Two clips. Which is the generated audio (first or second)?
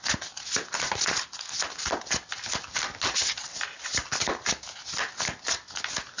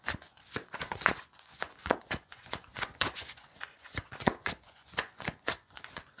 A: second